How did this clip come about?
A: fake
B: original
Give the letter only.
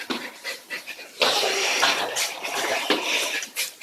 A